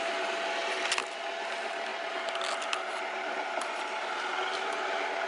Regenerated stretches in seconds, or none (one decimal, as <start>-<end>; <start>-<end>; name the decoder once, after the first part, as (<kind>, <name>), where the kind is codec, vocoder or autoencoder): none